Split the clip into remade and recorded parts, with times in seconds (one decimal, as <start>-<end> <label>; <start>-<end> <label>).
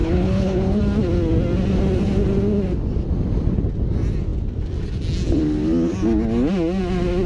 0.0-0.8 remade; 0.8-7.3 recorded